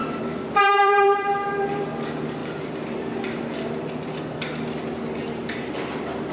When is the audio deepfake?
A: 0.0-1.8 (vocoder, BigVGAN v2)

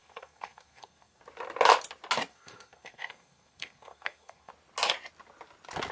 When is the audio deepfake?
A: 0.0-1.2 (codec, SNAC); 2.3-4.5

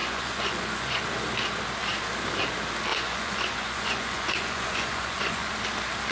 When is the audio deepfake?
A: 0.0-1.0 (vocoder, Vocos); 2.9-5.5